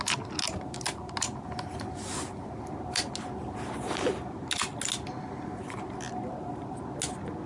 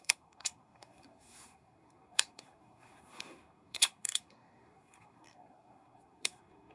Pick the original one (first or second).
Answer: first